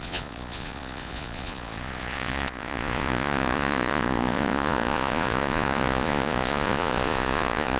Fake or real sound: fake